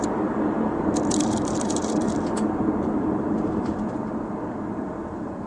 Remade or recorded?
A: remade